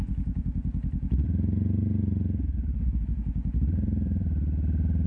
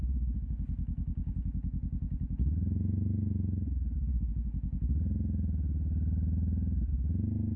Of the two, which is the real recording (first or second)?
second